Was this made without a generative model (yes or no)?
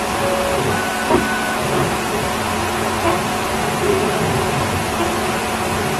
yes